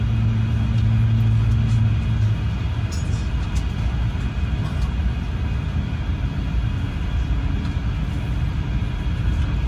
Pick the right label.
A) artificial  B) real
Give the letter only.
B